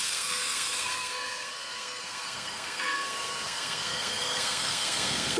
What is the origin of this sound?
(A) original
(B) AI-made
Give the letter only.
B